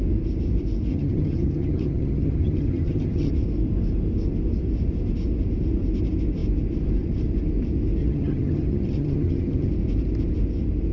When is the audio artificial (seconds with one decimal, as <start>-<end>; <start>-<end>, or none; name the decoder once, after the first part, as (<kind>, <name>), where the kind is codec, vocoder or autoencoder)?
0.9-3.3 (vocoder, HiFi-GAN); 8.0-9.7